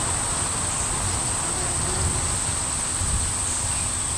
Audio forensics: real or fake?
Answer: real